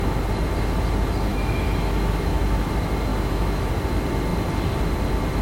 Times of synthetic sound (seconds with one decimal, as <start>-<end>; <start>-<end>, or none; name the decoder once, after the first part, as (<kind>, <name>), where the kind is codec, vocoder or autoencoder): 1.3-2.7 (autoencoder, DAC-VAE); 3.1-3.7